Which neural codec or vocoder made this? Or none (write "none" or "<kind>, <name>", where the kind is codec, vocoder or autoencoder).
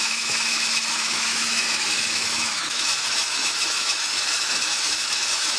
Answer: autoencoder, DAC-VAE